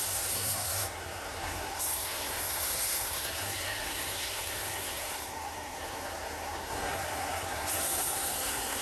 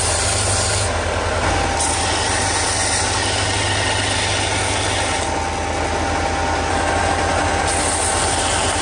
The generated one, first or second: first